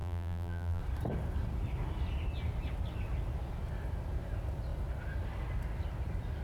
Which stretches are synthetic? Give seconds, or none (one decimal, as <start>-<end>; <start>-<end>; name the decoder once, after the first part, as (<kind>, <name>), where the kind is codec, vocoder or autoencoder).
0.0-0.8 (vocoder, BigVGAN v2)